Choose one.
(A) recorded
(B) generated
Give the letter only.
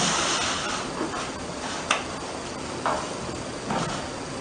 A